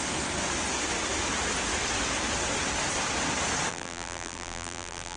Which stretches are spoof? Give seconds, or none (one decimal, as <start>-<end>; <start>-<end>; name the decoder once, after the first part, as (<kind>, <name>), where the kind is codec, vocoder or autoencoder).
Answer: 3.7-5.2 (vocoder, BigVGAN v2)